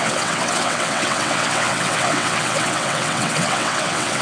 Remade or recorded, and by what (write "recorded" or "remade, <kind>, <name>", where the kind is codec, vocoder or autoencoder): remade, vocoder, WaveNeXt